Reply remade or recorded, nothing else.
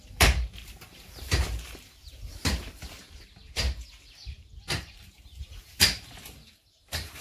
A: remade